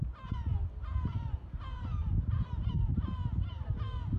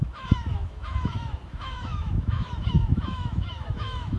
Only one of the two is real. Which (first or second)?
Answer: first